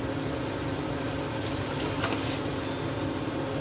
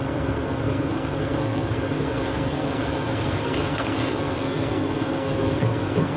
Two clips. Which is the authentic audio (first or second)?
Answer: first